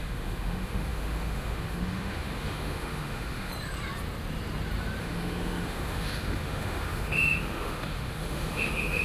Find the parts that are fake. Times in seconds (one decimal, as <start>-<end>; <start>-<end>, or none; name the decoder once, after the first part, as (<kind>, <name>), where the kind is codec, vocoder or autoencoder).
0.0-3.5 (autoencoder, DAC-VAE); 5.0-9.0